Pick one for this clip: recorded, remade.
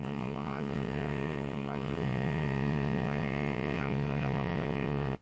remade